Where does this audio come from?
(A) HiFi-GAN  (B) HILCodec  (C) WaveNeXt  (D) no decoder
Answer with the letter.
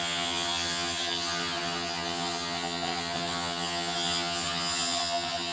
A